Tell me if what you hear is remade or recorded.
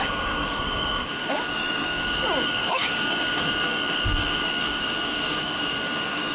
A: remade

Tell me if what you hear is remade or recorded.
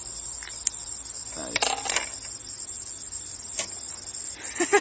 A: recorded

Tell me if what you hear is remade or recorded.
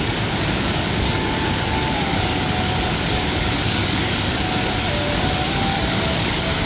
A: remade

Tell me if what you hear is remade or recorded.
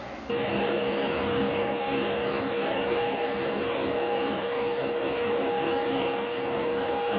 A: remade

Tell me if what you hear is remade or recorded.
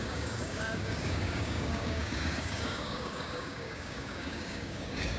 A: remade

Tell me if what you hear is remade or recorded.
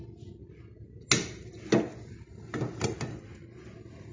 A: recorded